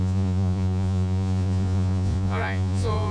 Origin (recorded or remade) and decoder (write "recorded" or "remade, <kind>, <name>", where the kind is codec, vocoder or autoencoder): remade, vocoder, Vocos